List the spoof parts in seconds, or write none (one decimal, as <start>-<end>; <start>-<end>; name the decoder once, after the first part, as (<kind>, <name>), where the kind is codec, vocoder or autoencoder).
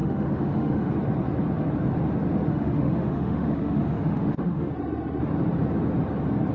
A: 0.0-0.9 (autoencoder, DAC-VAE); 2.5-4.7